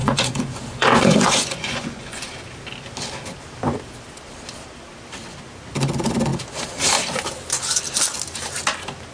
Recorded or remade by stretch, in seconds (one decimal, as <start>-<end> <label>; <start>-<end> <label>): 0.0-2.2 remade; 2.2-9.1 recorded